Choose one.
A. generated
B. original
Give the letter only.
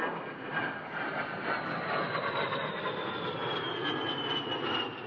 B